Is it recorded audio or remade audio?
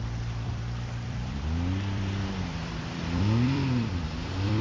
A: remade